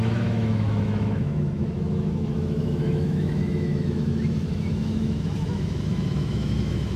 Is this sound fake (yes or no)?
yes